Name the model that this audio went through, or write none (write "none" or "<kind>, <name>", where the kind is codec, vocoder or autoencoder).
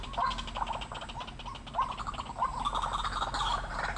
none